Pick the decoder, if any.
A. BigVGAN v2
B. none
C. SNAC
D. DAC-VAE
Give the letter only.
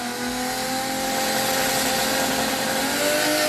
B